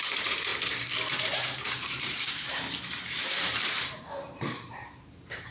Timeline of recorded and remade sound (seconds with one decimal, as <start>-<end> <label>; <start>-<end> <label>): 0.0-0.5 remade; 0.5-1.2 recorded; 1.2-5.5 remade